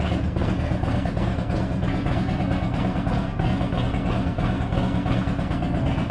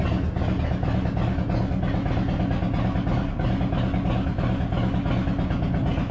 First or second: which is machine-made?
first